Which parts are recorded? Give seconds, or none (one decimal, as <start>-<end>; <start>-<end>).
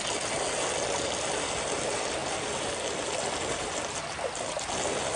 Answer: 0.0-5.2